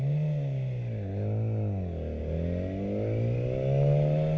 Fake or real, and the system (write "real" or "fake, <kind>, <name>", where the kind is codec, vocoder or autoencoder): real